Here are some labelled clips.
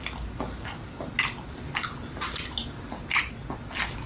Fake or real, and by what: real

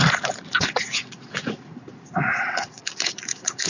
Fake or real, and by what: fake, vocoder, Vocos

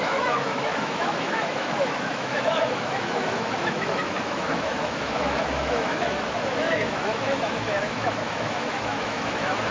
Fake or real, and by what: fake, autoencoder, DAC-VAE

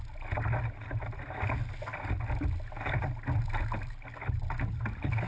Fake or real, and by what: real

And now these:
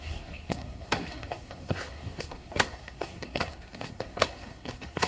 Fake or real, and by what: fake, codec, SNAC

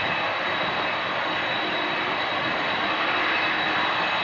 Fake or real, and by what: fake, vocoder, BigVGAN v2